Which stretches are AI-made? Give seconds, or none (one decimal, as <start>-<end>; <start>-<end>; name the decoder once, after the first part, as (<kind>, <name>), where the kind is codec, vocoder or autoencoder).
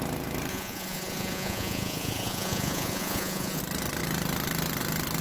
0.5-3.6 (vocoder, Vocos)